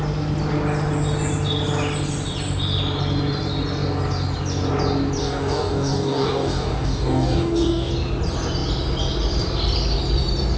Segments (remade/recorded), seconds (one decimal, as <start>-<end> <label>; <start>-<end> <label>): 0.0-5.2 recorded; 5.2-7.9 remade; 7.9-10.6 recorded